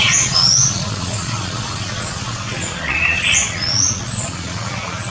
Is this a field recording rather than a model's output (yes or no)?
no